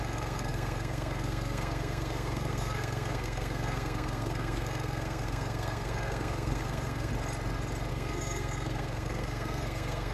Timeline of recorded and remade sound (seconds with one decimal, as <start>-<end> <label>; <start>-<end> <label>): 0.0-7.1 remade; 7.1-7.9 recorded; 7.9-10.1 remade